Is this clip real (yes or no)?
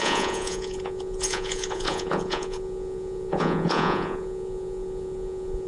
no